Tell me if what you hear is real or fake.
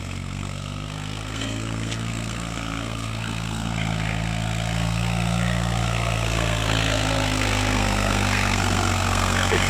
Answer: fake